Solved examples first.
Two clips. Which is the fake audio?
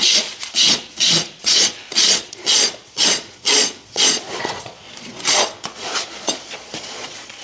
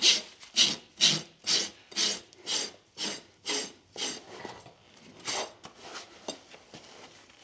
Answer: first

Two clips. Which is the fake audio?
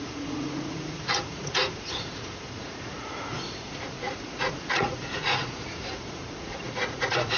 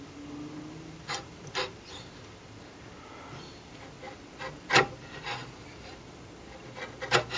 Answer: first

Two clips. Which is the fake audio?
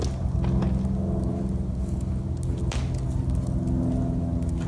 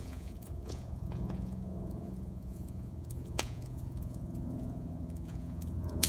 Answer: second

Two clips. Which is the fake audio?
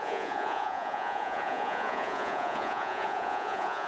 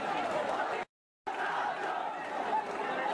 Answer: first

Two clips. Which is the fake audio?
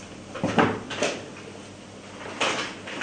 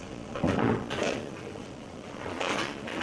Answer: second